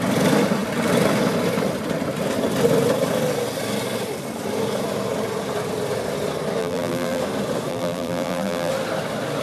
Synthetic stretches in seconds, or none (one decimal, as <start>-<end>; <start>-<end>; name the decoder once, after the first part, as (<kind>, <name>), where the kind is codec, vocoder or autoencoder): 6.6-7.2 (vocoder, BigVGAN v2); 7.7-8.7